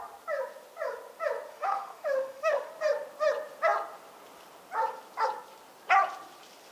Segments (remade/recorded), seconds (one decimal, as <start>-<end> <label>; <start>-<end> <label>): 0.0-1.5 recorded; 1.5-2.7 remade; 2.7-6.7 recorded